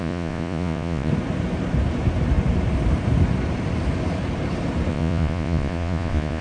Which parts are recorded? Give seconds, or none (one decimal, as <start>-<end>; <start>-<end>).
1.1-4.9